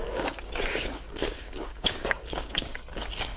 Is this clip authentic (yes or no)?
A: no